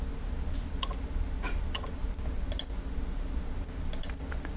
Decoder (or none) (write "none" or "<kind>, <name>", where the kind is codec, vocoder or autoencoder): none